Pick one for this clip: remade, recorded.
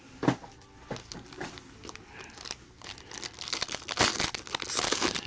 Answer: recorded